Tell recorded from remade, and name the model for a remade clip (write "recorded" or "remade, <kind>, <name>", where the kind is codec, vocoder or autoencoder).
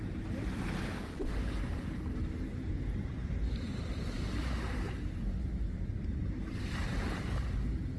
remade, vocoder, BigVGAN v2